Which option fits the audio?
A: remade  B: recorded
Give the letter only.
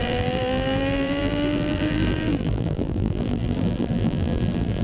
A